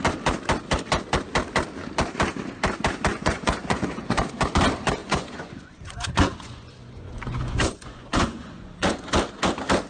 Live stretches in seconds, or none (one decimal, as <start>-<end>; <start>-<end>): 0.0-3.1; 4.2-5.0; 9.1-9.9